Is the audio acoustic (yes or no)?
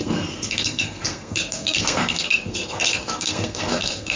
no